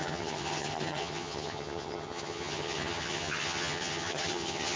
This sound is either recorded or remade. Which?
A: remade